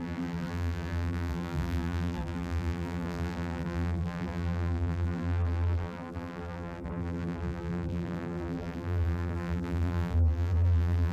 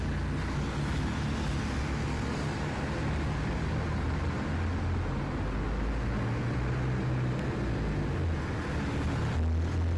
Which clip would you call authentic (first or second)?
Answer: second